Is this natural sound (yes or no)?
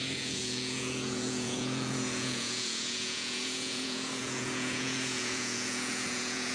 no